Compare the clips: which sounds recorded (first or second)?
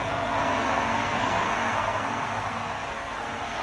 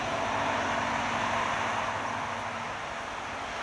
second